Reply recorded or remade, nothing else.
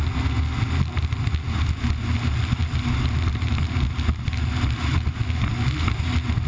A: recorded